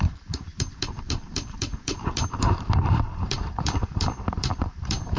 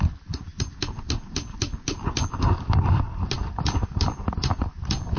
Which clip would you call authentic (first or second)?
second